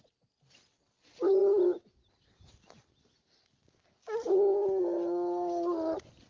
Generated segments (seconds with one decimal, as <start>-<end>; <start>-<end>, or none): none